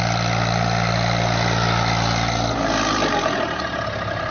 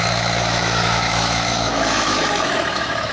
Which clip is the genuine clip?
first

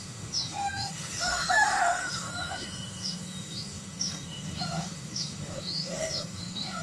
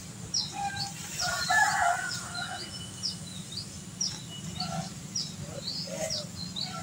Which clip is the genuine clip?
second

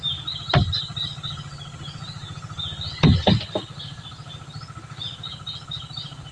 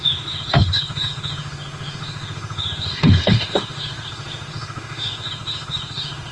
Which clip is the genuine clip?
first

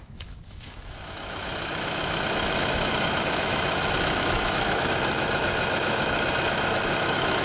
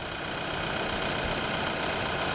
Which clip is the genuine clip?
second